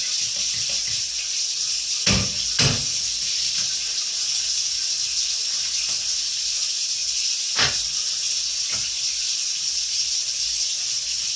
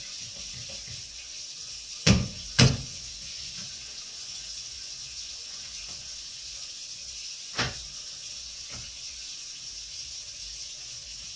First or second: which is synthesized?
second